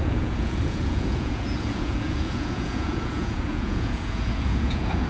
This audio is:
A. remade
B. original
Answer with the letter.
A